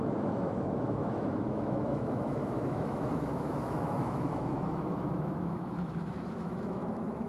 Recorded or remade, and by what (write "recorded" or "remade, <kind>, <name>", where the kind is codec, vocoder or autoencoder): remade, autoencoder, DAC-VAE